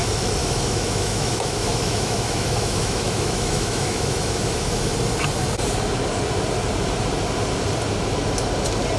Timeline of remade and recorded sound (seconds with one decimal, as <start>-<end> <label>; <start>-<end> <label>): 0.0-0.4 recorded; 0.4-4.9 remade; 4.9-9.0 recorded